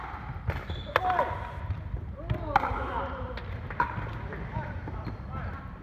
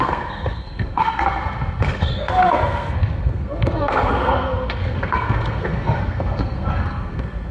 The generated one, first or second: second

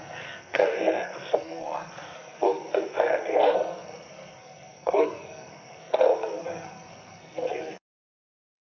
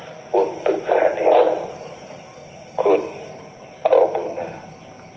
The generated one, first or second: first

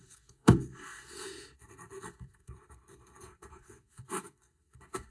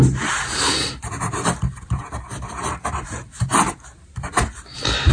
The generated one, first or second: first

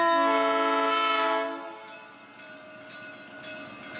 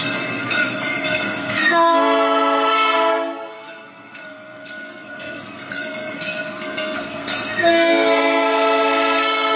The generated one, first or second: second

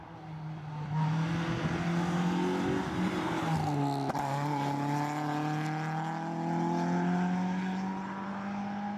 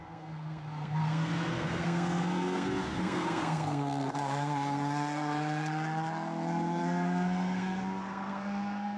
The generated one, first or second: second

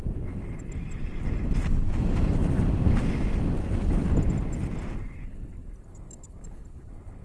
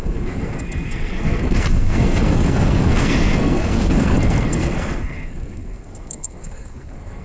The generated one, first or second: second